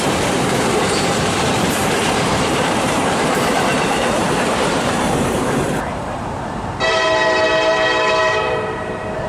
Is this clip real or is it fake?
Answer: fake